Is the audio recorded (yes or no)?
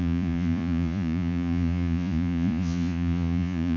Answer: no